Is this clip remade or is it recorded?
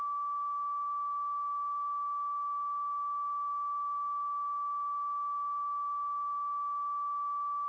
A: recorded